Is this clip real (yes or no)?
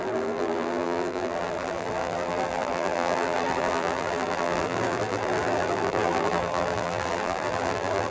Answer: no